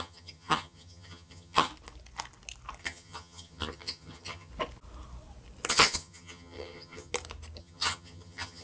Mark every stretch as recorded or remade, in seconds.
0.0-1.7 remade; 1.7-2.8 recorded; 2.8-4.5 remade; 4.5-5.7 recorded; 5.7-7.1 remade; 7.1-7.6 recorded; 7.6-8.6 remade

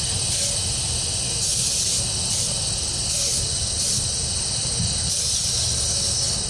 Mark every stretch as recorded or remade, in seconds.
0.0-1.5 recorded; 1.5-5.4 remade; 5.4-6.5 recorded

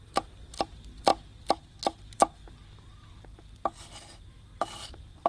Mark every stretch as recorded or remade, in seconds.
0.0-5.3 recorded

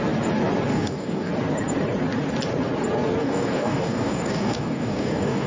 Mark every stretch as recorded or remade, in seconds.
0.0-0.7 recorded; 0.7-1.3 remade; 1.3-3.2 recorded; 3.2-5.5 remade

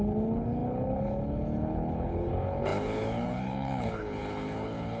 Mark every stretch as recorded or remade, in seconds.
0.0-5.0 remade